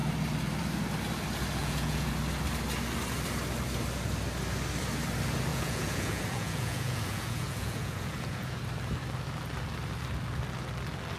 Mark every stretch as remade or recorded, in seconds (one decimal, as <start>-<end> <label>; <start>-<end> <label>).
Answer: 0.0-1.6 recorded; 1.6-2.1 remade; 2.1-5.5 recorded; 5.5-8.6 remade; 8.6-11.2 recorded